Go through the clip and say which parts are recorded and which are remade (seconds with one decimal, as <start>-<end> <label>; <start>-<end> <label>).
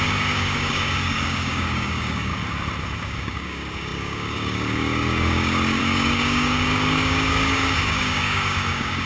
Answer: 0.0-2.3 remade; 2.3-3.0 recorded; 3.0-9.1 remade